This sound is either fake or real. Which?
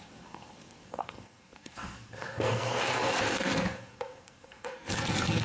fake